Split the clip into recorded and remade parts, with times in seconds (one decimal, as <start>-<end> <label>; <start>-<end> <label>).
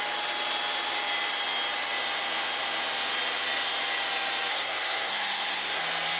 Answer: 0.0-4.5 recorded; 4.5-5.8 remade; 5.8-6.2 recorded